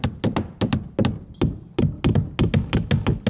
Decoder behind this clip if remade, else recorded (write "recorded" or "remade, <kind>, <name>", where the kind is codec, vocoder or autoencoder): recorded